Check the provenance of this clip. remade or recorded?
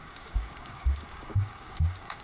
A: remade